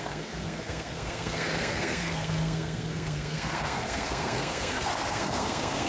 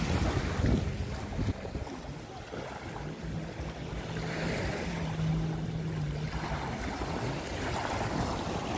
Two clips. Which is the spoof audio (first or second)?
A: first